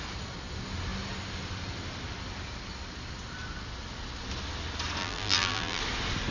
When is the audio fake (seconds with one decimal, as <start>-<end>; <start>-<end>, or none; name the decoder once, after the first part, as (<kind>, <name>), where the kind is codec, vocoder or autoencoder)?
5.0-5.8 (vocoder, BigVGAN v2)